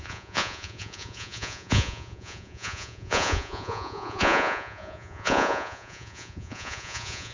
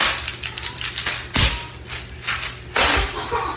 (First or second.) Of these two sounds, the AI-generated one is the first